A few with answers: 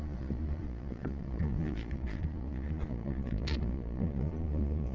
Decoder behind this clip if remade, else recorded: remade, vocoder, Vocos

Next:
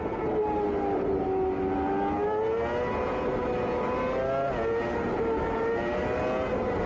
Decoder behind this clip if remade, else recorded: recorded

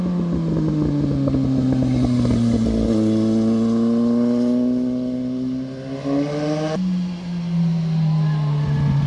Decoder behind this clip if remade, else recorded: recorded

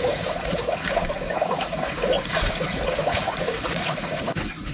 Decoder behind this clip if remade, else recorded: remade, vocoder, Vocos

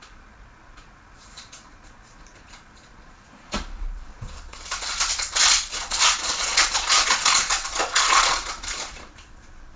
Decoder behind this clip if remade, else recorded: remade, vocoder, Vocos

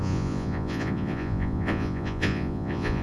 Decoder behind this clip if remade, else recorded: remade, vocoder, Vocos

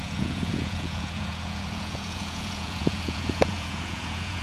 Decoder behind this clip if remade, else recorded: remade, vocoder, Vocos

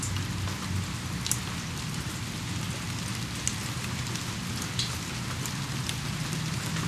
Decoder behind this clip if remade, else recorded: recorded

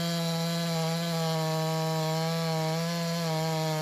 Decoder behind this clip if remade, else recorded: recorded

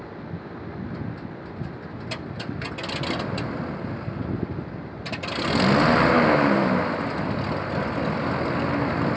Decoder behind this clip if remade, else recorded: recorded